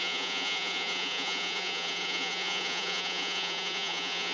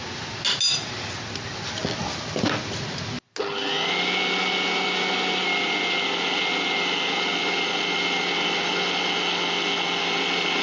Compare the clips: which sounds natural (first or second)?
second